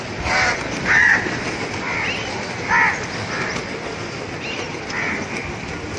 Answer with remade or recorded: recorded